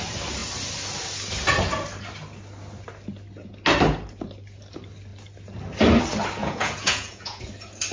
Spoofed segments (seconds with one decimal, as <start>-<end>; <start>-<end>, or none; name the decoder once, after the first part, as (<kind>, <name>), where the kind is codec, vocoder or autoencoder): 6.4-7.4 (vocoder, Vocos)